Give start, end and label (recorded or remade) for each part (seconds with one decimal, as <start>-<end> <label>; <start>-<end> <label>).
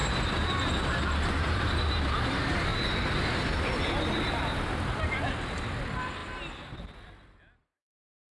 0.0-1.5 recorded; 1.5-6.2 remade; 6.2-8.3 recorded